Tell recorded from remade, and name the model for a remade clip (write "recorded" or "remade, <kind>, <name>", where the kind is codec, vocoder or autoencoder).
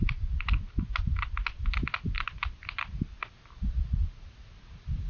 recorded